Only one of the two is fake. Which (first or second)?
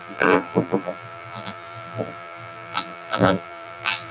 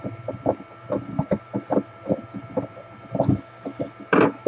first